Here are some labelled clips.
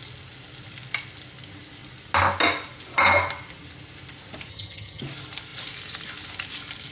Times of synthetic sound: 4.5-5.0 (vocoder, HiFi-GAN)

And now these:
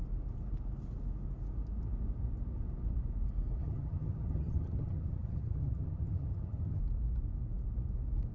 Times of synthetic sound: 3.6-6.8 (vocoder, HiFi-GAN)

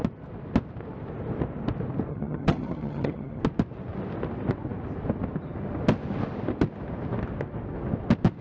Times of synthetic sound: 2.1-3.4 (vocoder, HiFi-GAN)

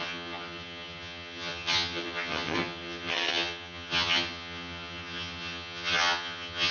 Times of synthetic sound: 0.0-6.7 (vocoder, HiFi-GAN)

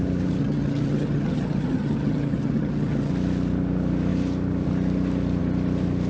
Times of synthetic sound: 0.4-3.1 (vocoder, HiFi-GAN)